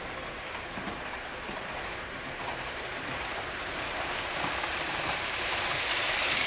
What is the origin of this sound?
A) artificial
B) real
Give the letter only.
A